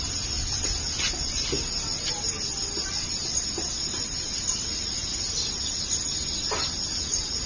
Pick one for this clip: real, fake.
real